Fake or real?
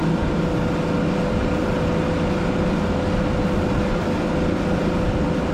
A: real